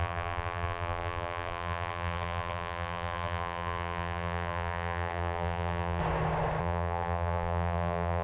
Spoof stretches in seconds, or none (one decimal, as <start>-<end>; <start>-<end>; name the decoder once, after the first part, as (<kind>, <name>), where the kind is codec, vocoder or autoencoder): 0.0-6.0 (vocoder, BigVGAN v2); 6.6-8.2